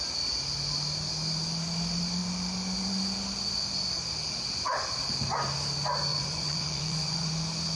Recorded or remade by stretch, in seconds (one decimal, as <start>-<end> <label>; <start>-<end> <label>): 0.0-6.1 recorded; 6.1-7.3 remade; 7.3-7.8 recorded